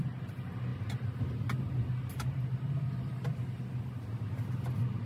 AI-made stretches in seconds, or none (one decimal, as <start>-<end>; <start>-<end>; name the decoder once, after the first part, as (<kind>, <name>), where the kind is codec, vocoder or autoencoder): none

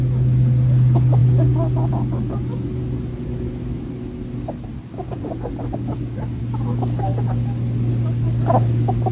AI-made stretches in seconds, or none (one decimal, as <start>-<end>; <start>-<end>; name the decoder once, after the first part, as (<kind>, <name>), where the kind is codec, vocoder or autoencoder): 4.7-6.4 (vocoder, BigVGAN v2)